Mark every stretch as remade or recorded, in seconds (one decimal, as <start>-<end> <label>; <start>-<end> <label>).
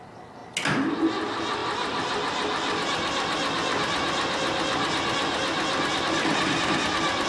0.0-7.3 recorded